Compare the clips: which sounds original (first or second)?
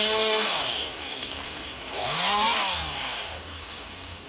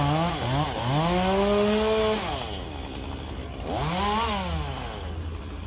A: second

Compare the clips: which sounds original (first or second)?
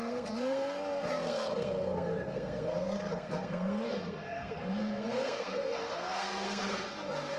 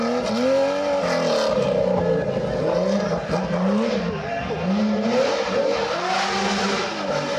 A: second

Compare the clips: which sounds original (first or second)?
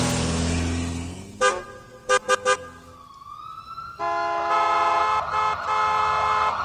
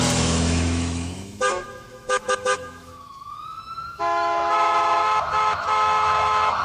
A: first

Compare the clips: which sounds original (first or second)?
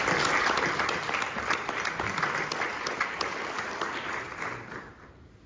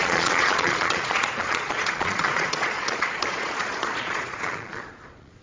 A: first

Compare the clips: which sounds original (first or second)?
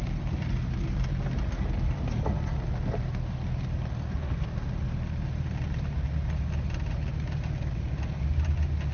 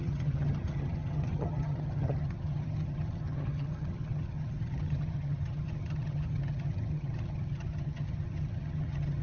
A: first